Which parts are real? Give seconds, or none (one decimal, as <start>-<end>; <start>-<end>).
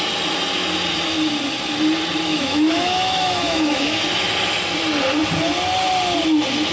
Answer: 0.0-2.3; 4.0-6.7